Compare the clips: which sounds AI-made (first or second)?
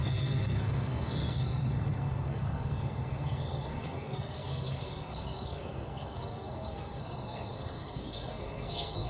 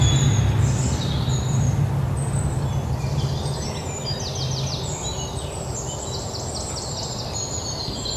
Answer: first